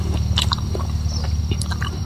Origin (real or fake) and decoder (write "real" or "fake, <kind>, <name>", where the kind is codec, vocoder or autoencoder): fake, vocoder, BigVGAN v2